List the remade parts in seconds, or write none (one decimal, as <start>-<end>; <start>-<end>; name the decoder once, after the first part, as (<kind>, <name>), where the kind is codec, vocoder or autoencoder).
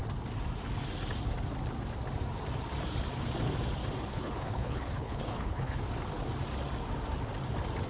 4.1-5.8 (codec, HILCodec)